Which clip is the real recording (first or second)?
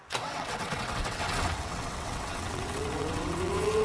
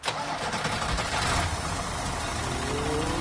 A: second